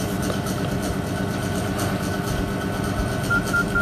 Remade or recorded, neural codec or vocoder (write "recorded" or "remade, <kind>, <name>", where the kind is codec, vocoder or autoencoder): recorded